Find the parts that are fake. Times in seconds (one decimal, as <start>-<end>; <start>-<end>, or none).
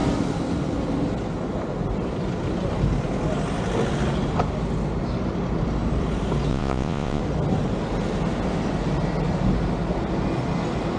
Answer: 6.5-7.2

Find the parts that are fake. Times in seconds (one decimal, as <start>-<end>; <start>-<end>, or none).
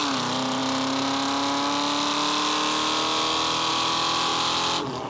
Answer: none